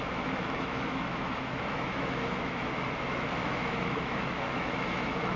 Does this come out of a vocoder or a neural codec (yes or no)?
yes